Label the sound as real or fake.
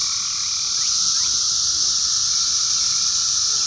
real